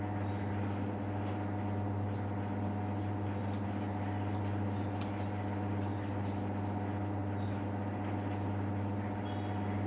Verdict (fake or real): real